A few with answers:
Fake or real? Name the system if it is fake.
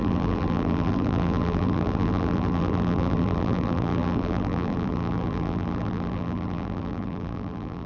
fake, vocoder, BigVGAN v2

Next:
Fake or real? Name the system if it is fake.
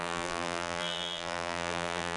fake, vocoder, BigVGAN v2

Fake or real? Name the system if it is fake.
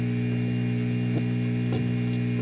real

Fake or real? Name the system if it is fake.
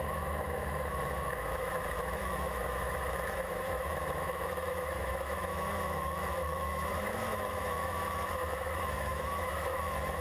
fake, autoencoder, DAC-VAE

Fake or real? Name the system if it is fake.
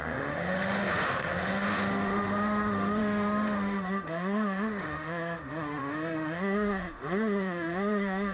fake, autoencoder, DAC-VAE